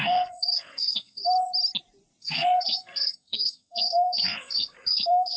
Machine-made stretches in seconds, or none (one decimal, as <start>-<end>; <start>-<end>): 0.0-1.2; 2.2-5.4